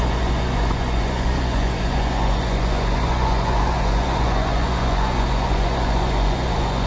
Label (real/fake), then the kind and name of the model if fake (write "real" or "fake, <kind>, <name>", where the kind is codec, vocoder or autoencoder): fake, vocoder, Vocos